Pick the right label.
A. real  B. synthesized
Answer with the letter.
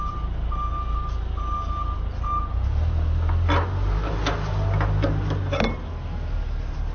A